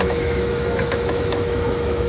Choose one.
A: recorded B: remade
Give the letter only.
B